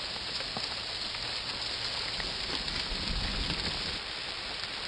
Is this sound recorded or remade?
recorded